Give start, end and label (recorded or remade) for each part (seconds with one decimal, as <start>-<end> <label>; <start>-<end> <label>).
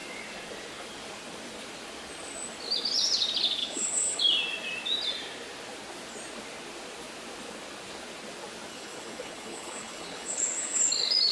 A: 0.0-3.6 recorded; 3.6-4.2 remade; 4.2-8.7 recorded; 8.7-10.9 remade; 10.9-11.3 recorded